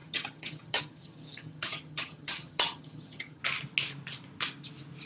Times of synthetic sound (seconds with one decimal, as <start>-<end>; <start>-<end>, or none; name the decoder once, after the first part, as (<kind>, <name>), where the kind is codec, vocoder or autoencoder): 0.0-3.4 (vocoder, HiFi-GAN)